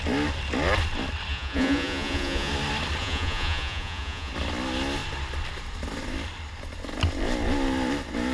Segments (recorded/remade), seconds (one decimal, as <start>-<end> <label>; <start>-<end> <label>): 0.0-1.3 recorded; 1.3-2.5 remade; 2.5-3.0 recorded; 3.0-4.3 remade; 4.3-8.3 recorded